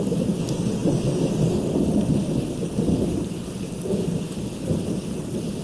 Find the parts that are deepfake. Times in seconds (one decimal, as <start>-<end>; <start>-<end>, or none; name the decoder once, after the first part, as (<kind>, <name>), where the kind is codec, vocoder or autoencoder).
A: none